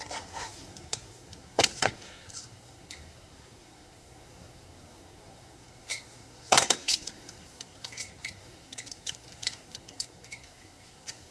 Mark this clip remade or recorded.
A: remade